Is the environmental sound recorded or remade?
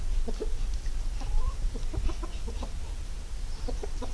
recorded